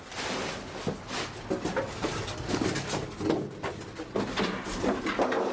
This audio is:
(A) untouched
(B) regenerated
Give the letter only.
A